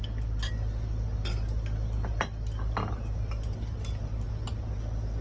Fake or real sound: real